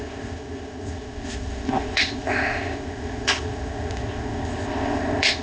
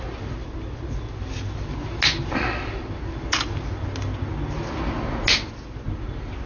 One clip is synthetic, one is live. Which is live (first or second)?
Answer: second